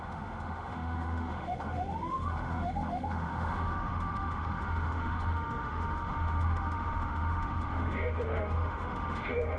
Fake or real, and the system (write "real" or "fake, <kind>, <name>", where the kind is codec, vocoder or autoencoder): fake, autoencoder, DAC-VAE